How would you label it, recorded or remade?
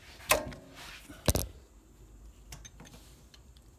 recorded